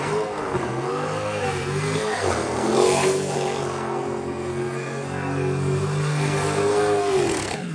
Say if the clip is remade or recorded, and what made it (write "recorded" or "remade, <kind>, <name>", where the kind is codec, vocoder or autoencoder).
remade, codec, SNAC